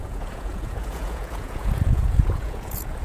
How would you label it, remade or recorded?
remade